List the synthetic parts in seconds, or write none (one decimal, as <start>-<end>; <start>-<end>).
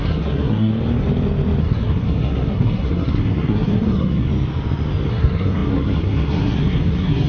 0.0-0.7; 1.6-4.3; 5.1-7.3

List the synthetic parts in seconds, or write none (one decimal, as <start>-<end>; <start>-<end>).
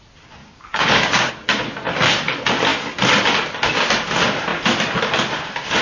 0.4-1.3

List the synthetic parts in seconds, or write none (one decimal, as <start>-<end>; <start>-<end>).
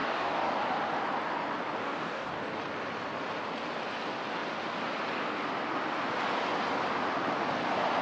0.0-0.6; 1.8-2.4